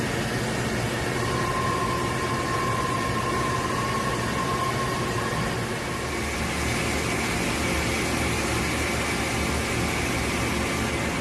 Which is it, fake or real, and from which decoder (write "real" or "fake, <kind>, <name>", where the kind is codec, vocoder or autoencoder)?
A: real